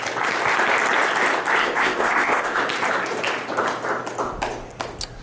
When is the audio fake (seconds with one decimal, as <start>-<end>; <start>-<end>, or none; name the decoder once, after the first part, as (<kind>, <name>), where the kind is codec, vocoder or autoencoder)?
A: 1.6-2.6 (codec, ZipCodec)